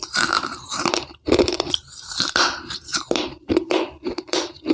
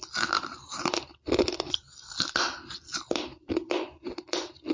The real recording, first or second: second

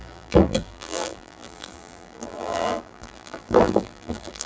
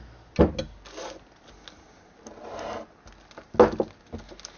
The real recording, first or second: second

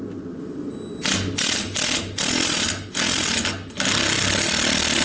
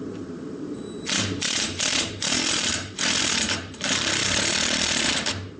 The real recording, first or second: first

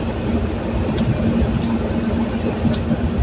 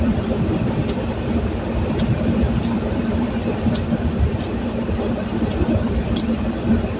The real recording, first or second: first